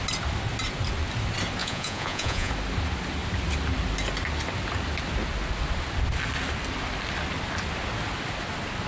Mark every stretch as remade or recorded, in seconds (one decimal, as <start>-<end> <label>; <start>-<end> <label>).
0.0-1.6 recorded; 1.6-2.5 remade; 2.5-8.9 recorded